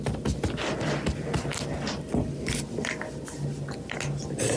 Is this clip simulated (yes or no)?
no